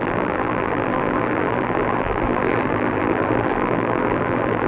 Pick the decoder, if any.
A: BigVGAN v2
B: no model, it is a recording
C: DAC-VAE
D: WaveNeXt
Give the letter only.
A